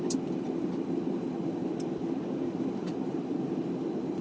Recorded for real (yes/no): yes